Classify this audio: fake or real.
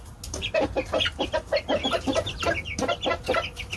real